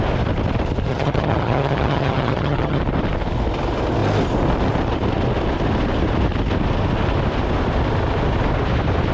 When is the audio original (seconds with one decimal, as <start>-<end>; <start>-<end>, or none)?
0.0-0.9; 2.8-9.1